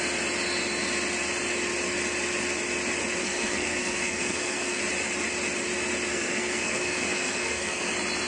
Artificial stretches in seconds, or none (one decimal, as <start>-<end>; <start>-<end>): 3.2-4.8; 6.1-7.9